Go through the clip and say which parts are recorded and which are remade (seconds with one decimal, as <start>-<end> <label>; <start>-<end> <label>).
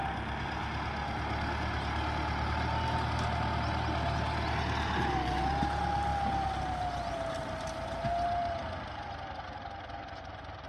0.0-10.7 recorded